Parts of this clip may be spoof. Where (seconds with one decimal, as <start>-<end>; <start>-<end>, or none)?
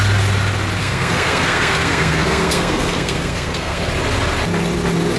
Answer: 0.8-3.9